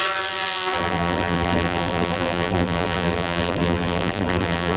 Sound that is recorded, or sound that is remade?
remade